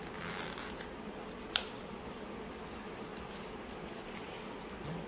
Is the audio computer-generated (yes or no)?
no